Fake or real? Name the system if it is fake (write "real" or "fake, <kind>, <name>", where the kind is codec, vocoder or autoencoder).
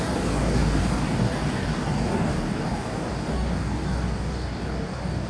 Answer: fake, codec, DAC